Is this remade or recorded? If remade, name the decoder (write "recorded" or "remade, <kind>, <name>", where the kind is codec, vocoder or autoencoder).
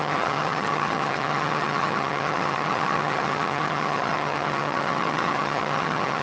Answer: remade, vocoder, HiFi-GAN